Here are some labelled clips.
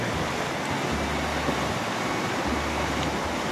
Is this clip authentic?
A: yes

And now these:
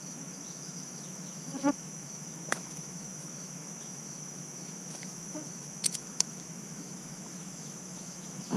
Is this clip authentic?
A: no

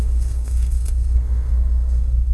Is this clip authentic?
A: no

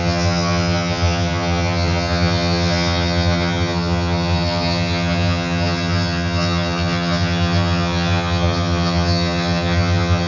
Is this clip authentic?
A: no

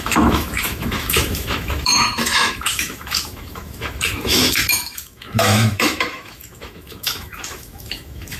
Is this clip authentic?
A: no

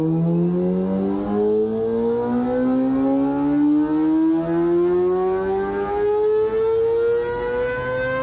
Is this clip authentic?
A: yes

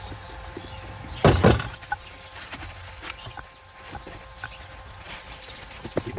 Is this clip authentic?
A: yes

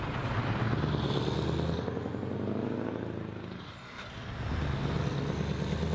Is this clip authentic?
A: yes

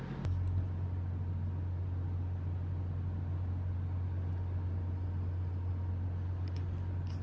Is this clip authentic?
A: yes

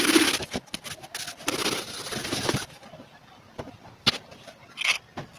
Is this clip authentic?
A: yes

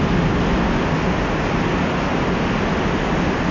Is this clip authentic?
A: yes